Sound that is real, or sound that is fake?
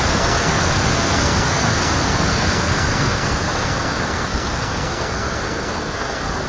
fake